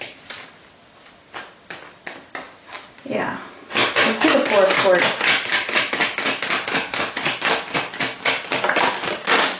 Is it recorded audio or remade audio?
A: recorded